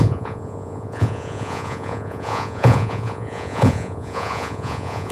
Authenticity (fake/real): fake